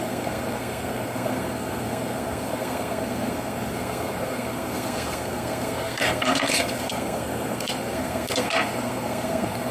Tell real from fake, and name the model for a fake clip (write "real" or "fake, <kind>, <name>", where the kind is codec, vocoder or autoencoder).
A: fake, codec, SNAC